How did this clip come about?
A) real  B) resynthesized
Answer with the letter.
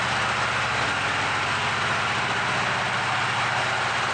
B